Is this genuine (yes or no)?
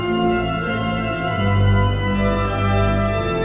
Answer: yes